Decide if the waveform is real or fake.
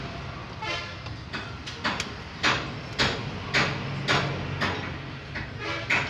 real